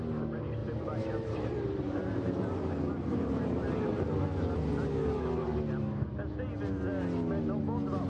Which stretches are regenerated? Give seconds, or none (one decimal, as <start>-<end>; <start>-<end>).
0.6-4.1